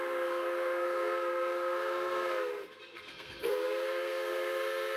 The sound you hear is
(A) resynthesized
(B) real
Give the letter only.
A